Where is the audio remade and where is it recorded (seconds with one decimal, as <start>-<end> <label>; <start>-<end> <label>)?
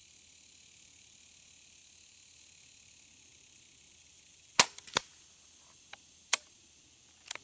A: 0.0-0.5 remade; 0.5-1.8 recorded; 1.8-2.4 remade; 2.4-5.1 recorded; 5.1-6.8 remade; 6.8-7.4 recorded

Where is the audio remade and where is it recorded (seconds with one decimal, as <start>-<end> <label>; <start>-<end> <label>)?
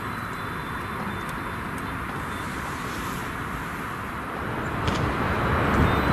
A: 0.0-2.5 recorded; 2.5-5.2 remade; 5.2-6.1 recorded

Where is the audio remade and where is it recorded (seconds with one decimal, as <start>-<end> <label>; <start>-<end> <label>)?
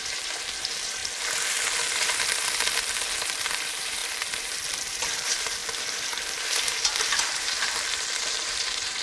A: 0.0-1.0 remade; 1.0-3.4 recorded; 3.4-5.6 remade; 5.6-6.9 recorded; 6.9-9.0 remade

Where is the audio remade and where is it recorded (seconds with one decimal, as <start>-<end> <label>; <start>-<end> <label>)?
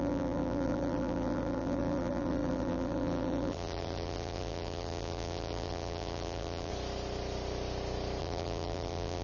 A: 0.0-6.7 remade; 6.7-8.2 recorded; 8.2-9.2 remade